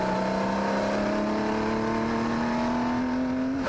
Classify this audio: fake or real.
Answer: real